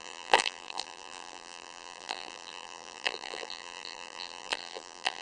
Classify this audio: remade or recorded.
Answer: remade